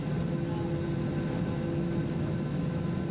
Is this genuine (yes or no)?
yes